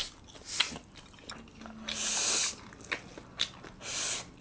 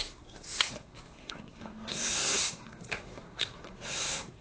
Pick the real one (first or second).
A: first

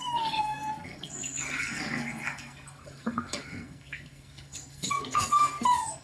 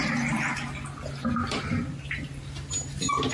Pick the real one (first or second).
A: second